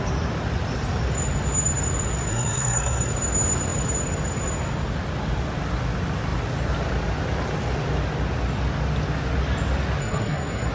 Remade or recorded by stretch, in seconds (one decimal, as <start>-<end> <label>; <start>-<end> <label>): 0.0-2.3 recorded; 2.3-3.1 remade; 3.1-10.0 recorded; 10.0-10.7 remade